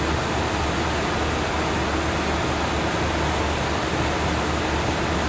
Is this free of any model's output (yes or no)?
yes